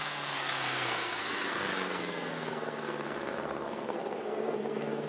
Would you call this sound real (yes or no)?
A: no